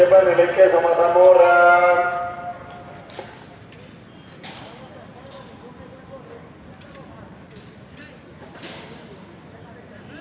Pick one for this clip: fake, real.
real